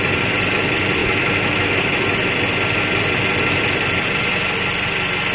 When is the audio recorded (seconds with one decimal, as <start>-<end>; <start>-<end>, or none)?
0.0-1.0; 1.8-5.3